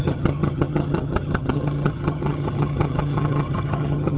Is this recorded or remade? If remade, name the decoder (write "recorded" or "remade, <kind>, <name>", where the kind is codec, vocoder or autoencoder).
remade, vocoder, HiFi-GAN